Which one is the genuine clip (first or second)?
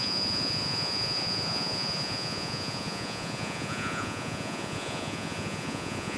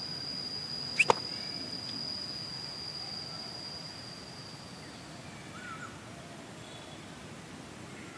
second